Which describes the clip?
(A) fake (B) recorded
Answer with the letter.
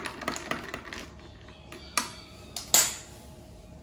B